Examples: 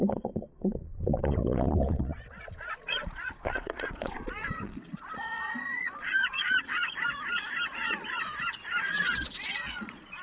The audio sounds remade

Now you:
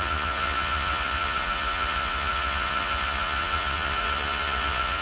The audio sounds remade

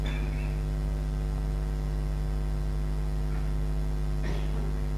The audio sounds recorded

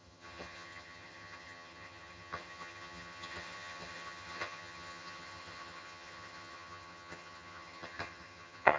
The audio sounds remade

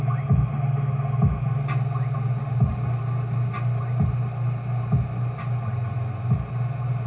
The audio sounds recorded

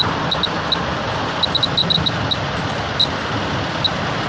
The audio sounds recorded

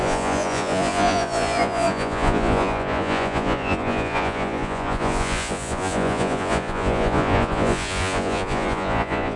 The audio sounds remade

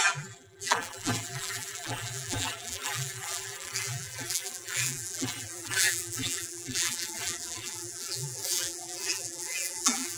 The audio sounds remade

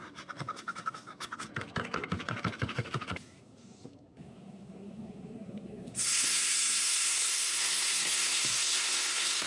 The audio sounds remade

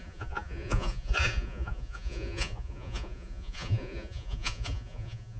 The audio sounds remade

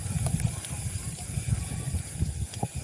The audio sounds recorded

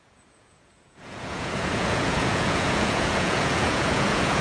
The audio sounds remade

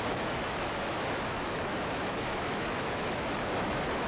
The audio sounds remade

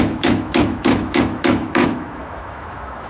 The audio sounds remade